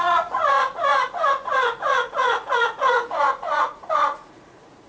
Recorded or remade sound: remade